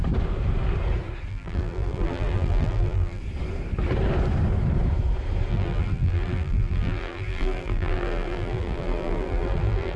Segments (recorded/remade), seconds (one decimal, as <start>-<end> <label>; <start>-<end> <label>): 0.0-1.3 recorded; 1.3-3.2 remade; 3.2-5.5 recorded; 5.5-10.0 remade